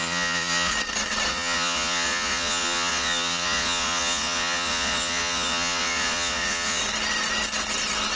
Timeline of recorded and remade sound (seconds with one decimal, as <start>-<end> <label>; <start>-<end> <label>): 0.0-0.7 remade; 0.7-1.3 recorded; 1.3-6.8 remade; 6.8-8.2 recorded